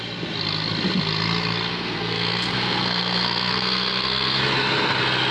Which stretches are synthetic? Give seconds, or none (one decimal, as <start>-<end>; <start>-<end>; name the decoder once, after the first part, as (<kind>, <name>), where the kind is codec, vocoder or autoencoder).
1.7-4.4 (codec, SNAC)